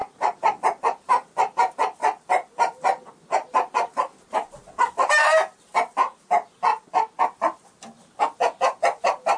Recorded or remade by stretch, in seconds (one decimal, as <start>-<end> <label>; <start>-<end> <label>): 0.0-1.3 remade; 1.3-9.4 recorded